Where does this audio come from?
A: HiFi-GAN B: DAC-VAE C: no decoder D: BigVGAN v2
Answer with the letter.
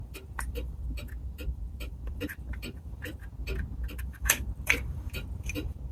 D